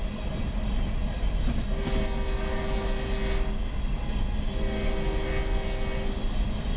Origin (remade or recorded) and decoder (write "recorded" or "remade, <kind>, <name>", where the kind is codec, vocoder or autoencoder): recorded